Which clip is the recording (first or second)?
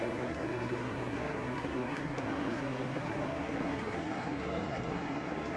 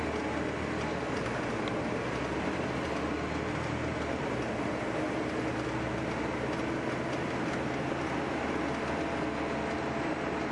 second